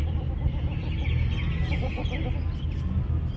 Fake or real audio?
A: real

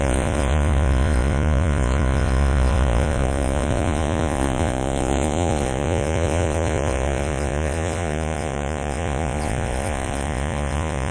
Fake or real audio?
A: fake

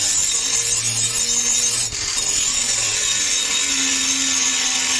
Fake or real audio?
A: real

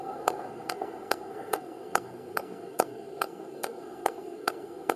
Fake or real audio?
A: fake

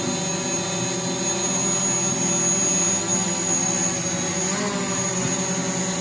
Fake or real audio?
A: real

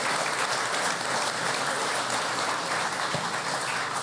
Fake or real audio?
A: real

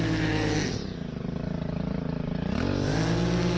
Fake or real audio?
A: real